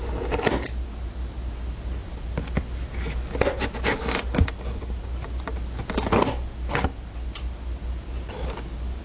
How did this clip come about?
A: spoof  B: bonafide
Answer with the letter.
B